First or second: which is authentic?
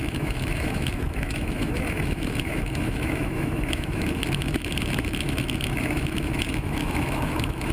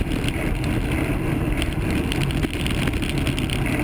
second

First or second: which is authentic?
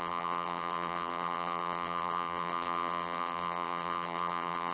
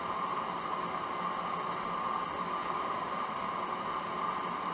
second